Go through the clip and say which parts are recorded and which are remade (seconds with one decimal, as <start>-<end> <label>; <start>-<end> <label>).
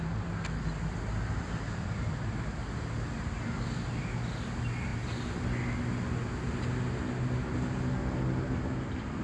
0.0-9.2 recorded